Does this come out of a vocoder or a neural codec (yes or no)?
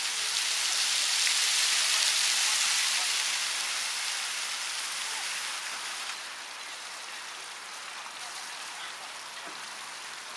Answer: no